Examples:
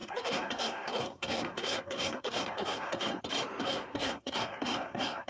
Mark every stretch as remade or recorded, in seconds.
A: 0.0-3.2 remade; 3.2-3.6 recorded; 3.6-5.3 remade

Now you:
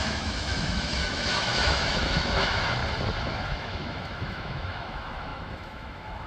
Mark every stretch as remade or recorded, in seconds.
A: 0.0-2.8 remade; 2.8-3.3 recorded; 3.3-6.3 remade